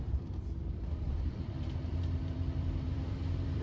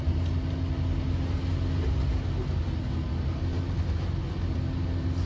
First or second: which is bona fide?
second